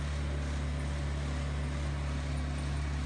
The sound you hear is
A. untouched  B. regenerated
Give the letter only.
A